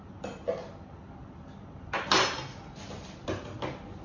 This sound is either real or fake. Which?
real